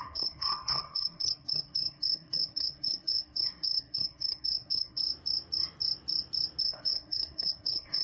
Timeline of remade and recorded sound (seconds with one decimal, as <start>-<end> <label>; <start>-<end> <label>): 0.0-5.0 remade; 5.0-6.6 recorded; 6.6-8.0 remade